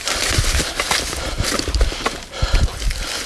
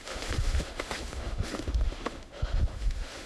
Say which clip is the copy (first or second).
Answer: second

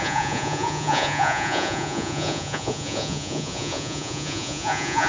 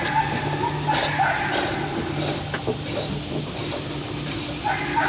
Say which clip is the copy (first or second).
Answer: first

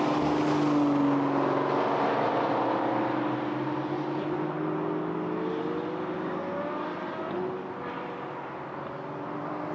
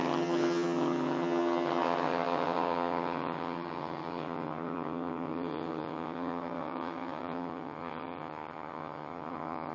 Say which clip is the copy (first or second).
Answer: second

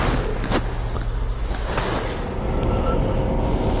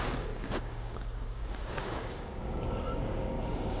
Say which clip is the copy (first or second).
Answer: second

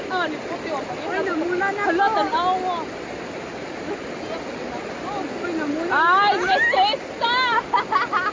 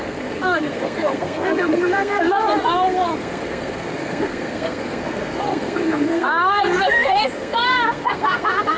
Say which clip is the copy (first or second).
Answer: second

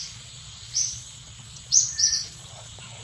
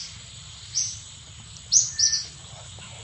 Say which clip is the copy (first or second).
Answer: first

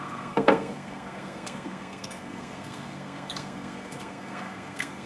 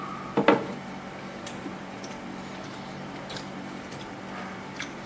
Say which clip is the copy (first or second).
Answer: first